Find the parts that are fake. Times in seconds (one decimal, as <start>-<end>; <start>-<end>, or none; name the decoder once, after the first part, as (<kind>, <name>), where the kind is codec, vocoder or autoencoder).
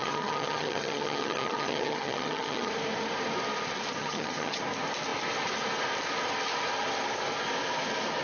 0.0-2.7 (vocoder, HiFi-GAN); 4.0-4.6